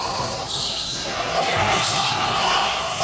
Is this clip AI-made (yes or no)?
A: yes